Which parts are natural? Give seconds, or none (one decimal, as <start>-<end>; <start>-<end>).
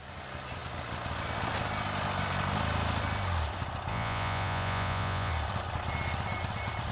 0.0-3.9; 5.3-6.9